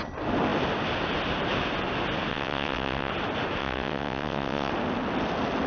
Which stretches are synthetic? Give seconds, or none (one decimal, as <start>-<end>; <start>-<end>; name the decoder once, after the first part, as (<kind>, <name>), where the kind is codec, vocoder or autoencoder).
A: 2.3-3.1 (vocoder, WaveNeXt); 3.6-4.7